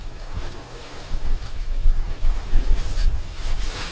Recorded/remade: remade